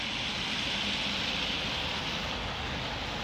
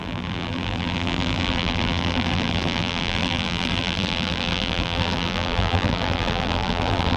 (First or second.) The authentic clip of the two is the first